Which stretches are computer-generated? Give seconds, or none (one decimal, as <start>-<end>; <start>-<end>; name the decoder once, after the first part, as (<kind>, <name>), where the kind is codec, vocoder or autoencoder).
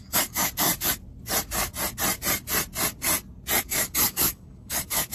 0.0-0.7 (codec, DAC); 3.6-5.1